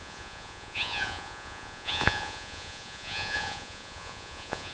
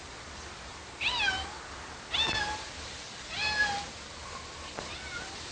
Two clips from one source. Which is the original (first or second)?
second